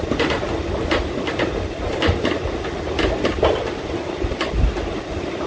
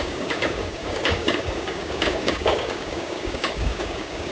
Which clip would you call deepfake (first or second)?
second